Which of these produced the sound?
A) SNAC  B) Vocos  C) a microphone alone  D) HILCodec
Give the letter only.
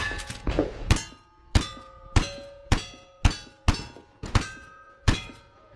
B